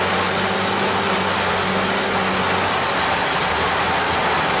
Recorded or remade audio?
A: recorded